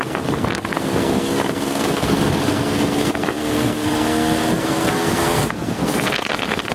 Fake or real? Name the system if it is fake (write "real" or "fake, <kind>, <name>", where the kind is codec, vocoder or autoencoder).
fake, codec, SNAC